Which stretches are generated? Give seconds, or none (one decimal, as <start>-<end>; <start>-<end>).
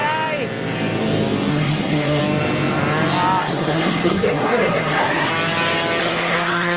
1.5-2.2; 3.4-5.3; 6.0-6.8